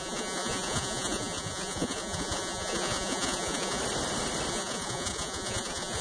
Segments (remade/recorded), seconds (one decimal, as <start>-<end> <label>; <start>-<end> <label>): 0.0-3.8 remade; 3.8-4.5 recorded; 4.5-6.0 remade